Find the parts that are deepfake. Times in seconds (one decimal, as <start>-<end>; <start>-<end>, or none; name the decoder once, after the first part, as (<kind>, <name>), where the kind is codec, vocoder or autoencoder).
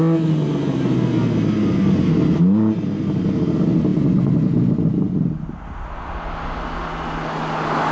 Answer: none